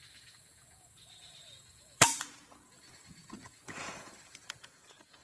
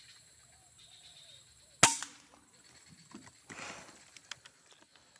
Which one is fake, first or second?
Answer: first